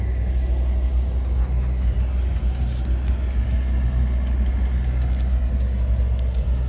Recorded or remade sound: recorded